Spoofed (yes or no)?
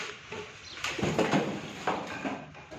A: no